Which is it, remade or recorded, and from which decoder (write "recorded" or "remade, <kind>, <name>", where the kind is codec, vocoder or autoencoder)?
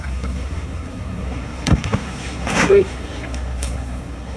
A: remade, codec, SNAC